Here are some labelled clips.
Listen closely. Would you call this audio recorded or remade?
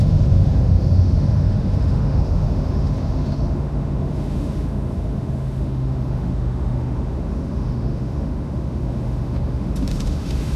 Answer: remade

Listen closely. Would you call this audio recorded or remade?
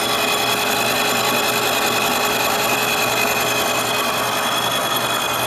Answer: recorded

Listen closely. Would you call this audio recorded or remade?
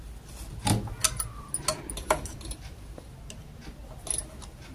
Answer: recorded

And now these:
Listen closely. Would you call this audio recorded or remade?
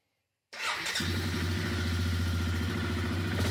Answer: recorded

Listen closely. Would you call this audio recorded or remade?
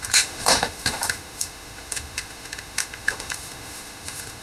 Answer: remade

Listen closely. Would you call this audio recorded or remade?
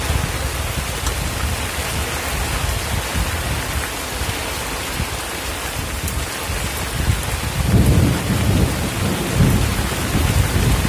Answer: recorded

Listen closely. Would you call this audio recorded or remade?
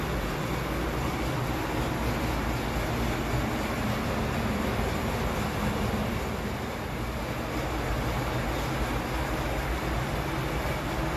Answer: recorded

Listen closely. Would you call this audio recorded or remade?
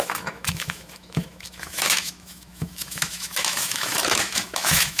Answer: remade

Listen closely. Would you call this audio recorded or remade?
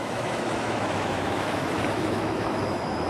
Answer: remade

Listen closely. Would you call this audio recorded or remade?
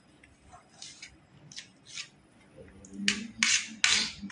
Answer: recorded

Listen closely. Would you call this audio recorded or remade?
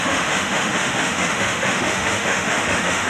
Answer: remade